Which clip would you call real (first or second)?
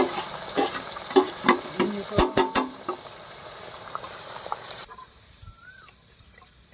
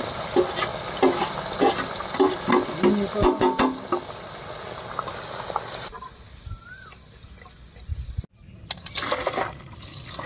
second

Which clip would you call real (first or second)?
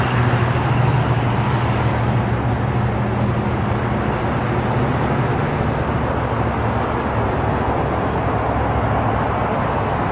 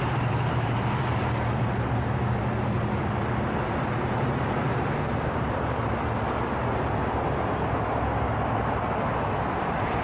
first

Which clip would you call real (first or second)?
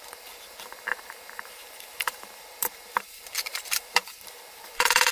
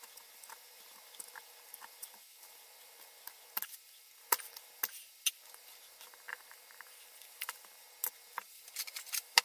second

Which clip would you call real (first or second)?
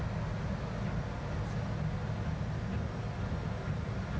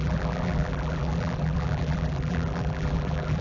first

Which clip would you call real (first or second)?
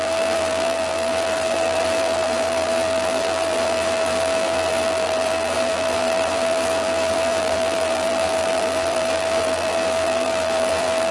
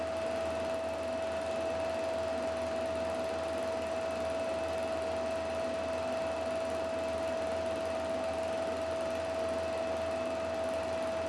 second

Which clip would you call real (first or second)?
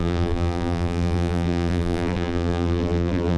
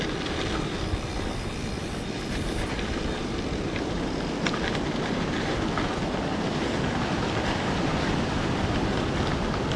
second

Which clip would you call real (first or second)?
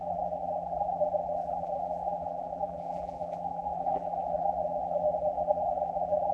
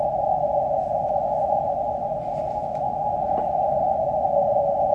second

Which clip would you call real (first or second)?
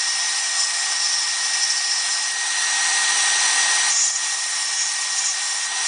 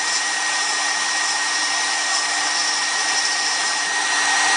first